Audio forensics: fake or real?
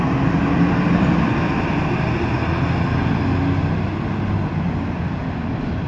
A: real